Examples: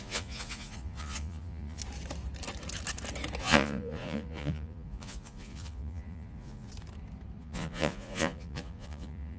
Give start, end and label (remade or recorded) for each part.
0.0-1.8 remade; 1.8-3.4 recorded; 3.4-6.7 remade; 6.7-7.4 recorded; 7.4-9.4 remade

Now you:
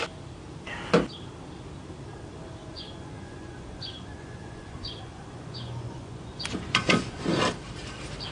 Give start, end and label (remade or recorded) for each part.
0.0-2.6 recorded; 2.6-7.4 remade; 7.4-8.3 recorded